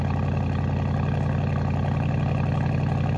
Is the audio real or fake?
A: real